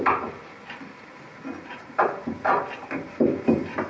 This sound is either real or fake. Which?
real